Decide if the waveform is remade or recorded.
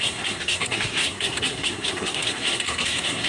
remade